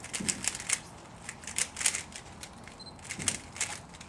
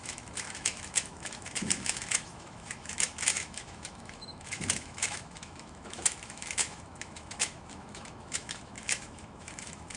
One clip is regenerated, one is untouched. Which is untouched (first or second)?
first